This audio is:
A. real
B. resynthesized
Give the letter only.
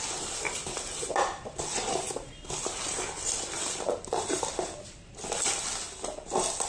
A